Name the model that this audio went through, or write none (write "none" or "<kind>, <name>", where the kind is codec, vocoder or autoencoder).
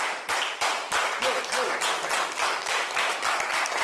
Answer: none